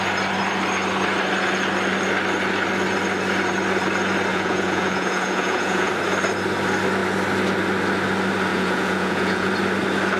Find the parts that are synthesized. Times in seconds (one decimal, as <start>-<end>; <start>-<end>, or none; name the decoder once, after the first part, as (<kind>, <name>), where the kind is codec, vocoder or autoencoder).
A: 4.3-5.9 (vocoder, Vocos); 8.5-9.5